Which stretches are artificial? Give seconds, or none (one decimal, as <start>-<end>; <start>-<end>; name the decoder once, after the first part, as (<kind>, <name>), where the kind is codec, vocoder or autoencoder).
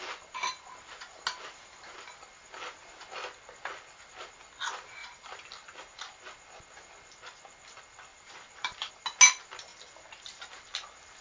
5.0-6.2 (vocoder, BigVGAN v2); 8.1-8.9; 9.7-10.5